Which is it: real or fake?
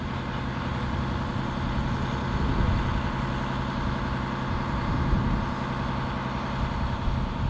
real